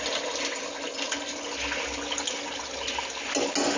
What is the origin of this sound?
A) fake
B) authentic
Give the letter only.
B